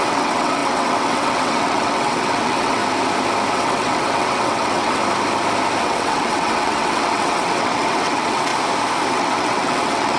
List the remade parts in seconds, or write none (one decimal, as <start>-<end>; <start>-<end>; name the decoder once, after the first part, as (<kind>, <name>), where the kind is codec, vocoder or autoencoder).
0.0-2.8 (vocoder, WaveNeXt); 3.5-5.0; 5.8-8.5; 9.1-10.2